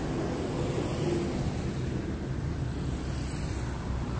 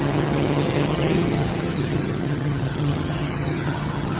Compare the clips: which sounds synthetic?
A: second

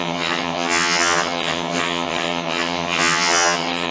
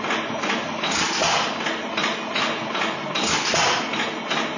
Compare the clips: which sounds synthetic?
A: first